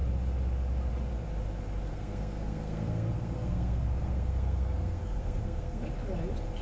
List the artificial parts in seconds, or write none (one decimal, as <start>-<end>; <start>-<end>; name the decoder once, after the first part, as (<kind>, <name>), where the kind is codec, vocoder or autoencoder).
1.9-5.9 (codec, SNAC)